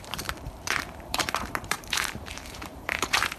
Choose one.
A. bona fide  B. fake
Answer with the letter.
B